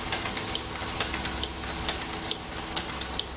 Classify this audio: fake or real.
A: real